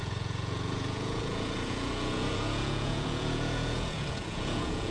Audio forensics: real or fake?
fake